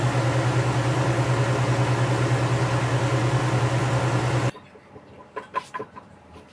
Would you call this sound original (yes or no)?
yes